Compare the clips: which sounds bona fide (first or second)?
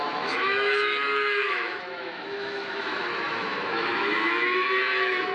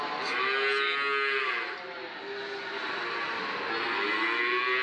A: second